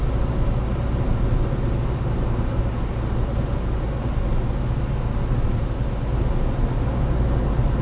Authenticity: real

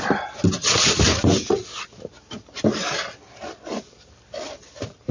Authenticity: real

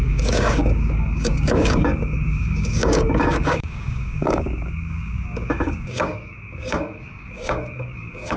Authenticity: fake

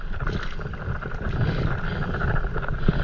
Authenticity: real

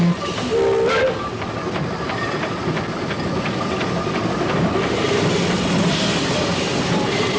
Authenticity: real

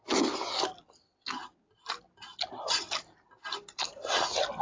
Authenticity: real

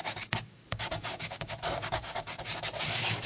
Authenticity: fake